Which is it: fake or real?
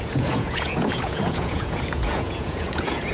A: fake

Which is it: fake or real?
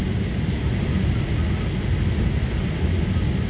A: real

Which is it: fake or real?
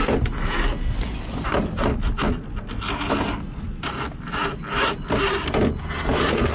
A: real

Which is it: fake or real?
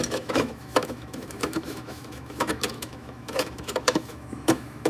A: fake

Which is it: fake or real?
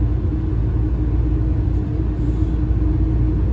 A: real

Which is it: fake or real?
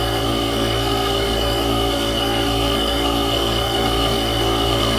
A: fake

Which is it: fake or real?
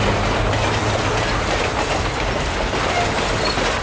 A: real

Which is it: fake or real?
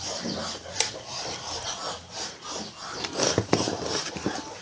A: real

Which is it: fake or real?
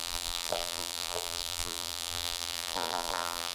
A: fake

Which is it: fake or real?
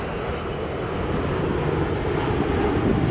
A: real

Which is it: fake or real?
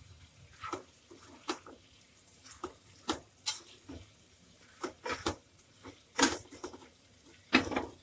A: fake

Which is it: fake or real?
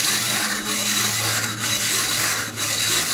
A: fake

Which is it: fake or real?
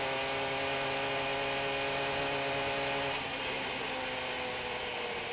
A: real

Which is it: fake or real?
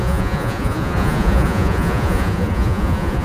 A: fake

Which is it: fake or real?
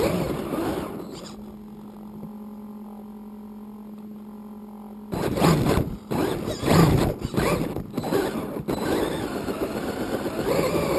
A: real